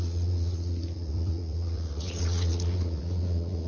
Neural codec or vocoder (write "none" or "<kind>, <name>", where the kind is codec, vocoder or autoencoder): vocoder, Vocos